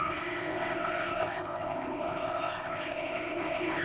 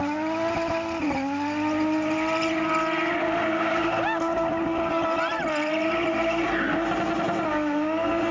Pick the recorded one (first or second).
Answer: second